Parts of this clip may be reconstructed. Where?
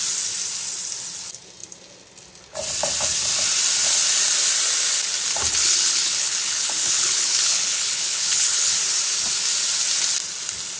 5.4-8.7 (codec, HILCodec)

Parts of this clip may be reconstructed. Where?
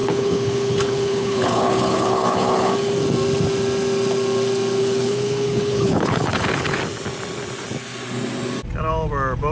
0.0-2.7 (codec, HILCodec); 4.8-6.8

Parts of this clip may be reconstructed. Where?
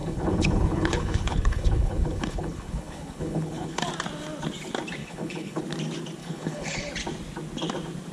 0.0-3.8 (codec, HILCodec); 5.0-5.6; 6.2-6.9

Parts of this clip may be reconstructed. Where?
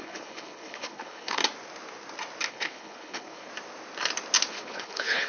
0.0-1.4 (codec, HILCodec); 2.5-3.5; 4.5-5.3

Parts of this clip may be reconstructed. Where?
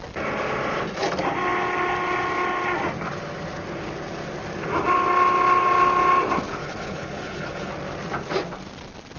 6.6-7.7 (codec, HILCodec)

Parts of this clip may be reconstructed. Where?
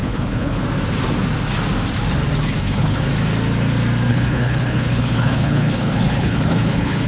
0.0-0.6 (codec, HILCodec); 2.4-3.0; 4.1-7.1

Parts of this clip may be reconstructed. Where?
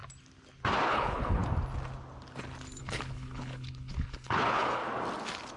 0.9-1.4 (codec, HILCodec); 2.8-4.8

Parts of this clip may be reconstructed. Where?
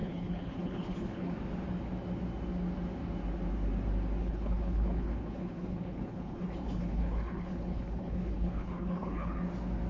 0.0-1.3 (codec, HILCodec); 4.2-9.4